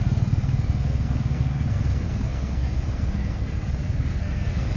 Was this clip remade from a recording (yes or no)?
yes